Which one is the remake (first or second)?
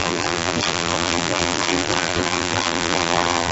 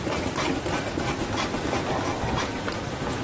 first